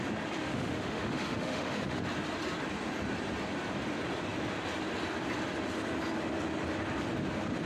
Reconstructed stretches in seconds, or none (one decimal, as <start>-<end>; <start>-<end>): 0.4-2.0